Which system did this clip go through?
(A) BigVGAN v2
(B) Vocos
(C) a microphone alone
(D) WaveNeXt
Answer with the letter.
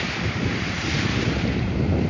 A